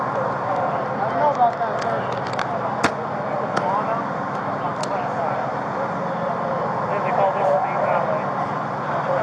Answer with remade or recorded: recorded